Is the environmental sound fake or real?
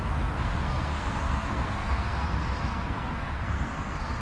fake